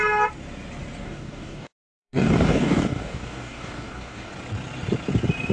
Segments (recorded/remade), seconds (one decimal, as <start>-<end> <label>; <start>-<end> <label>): 0.0-1.0 recorded; 1.0-4.3 remade; 4.3-5.5 recorded

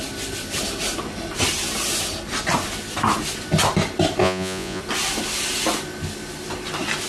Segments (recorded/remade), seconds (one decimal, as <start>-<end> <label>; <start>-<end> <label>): 0.0-4.2 recorded; 4.2-4.8 remade; 4.8-7.1 recorded

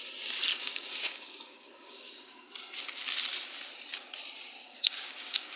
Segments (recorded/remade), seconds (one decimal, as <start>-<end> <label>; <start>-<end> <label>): 0.0-0.5 recorded; 0.5-2.5 remade; 2.5-4.6 recorded; 4.6-5.6 remade

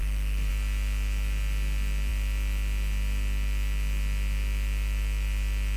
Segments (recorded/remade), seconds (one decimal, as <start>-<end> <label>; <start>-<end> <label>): 0.0-0.5 remade; 0.5-5.8 recorded

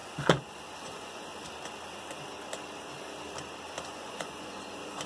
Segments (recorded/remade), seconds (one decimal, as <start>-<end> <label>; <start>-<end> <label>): 0.0-0.8 recorded; 0.8-1.3 remade; 1.3-3.9 recorded; 3.9-5.1 remade